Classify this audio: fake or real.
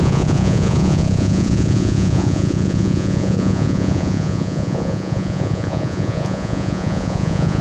fake